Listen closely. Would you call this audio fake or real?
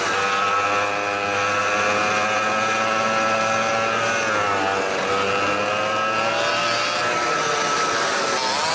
real